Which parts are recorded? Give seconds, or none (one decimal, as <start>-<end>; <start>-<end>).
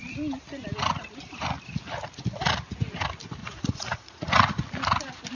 0.0-3.4; 4.6-5.3